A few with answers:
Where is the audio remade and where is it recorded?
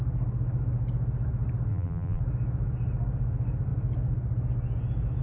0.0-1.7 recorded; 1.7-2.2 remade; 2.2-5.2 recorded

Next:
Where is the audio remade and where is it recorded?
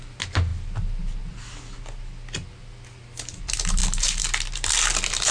0.0-5.3 recorded